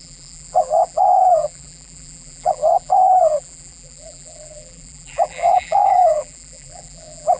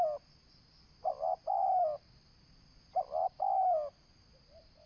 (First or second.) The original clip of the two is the second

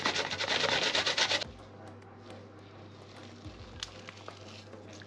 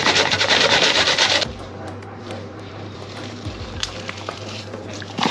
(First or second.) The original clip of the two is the first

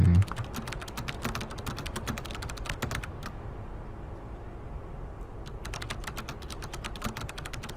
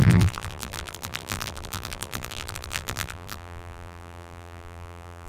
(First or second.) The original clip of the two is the first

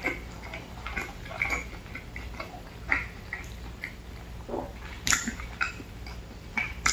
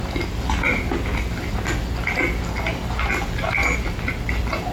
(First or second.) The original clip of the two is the second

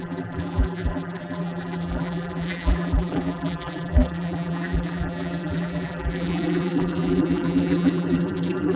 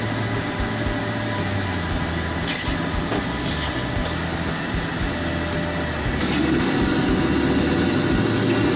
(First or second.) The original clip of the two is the second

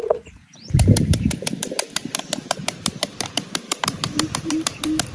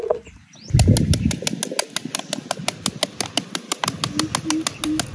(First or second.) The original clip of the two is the second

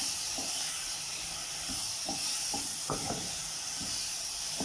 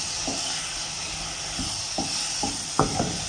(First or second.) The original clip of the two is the second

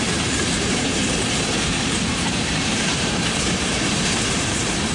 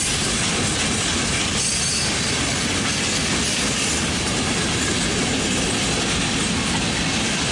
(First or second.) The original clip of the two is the second